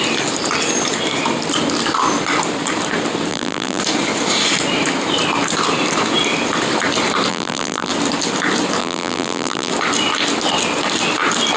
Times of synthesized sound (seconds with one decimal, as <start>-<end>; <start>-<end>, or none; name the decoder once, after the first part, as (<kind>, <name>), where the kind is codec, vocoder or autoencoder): 3.3-3.8 (vocoder, BigVGAN v2); 7.3-7.9; 8.8-9.7

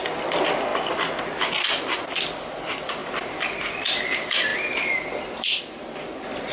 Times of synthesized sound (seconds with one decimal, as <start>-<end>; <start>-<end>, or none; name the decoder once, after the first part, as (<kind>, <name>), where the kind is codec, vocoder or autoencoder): 0.7-1.2 (vocoder, BigVGAN v2); 3.0-3.6; 4.5-5.6